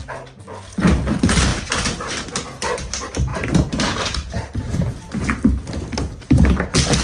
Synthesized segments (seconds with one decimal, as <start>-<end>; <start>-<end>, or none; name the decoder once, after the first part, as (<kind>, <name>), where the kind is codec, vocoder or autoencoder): 1.5-2.3 (vocoder, BigVGAN v2); 3.3-5.1